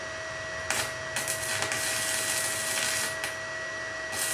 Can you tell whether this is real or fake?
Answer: real